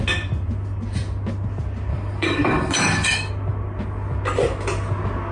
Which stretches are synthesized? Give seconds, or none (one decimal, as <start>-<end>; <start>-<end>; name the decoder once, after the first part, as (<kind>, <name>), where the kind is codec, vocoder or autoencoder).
1.9-3.3 (codec, DAC)